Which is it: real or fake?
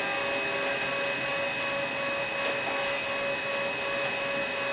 real